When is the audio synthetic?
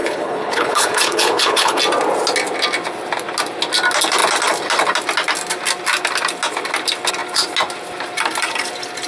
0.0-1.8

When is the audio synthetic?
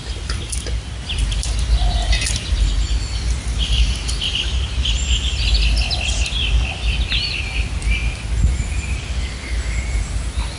none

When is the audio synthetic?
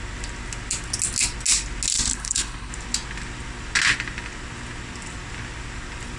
2.1-2.7